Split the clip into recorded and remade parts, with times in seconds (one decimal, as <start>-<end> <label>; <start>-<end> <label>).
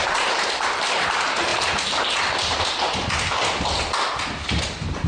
0.0-5.1 recorded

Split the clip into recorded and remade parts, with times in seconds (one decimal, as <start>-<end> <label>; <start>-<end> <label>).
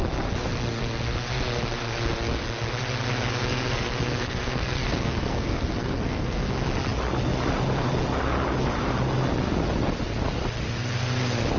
0.0-3.4 recorded; 3.4-6.5 remade; 6.5-11.6 recorded